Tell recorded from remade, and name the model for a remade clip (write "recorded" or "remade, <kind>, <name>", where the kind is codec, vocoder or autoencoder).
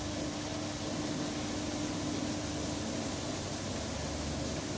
recorded